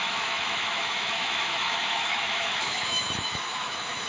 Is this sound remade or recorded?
remade